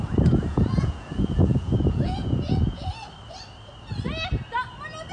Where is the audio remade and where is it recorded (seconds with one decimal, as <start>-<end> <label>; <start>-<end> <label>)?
0.0-0.5 recorded; 0.5-2.8 remade; 2.8-5.1 recorded